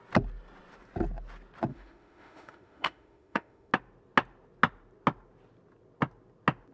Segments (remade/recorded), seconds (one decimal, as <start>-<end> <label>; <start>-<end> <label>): 0.0-1.7 recorded; 1.7-3.7 remade; 3.7-6.7 recorded